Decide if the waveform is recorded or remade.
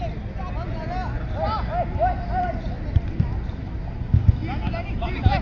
recorded